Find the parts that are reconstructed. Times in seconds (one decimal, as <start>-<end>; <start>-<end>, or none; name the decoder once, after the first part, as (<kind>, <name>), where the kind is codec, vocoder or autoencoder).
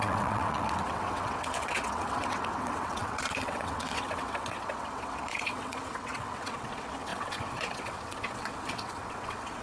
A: 0.0-9.6 (vocoder, WaveNeXt)